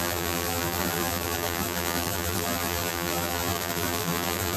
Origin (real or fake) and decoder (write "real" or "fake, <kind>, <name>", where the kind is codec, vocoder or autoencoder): fake, vocoder, BigVGAN v2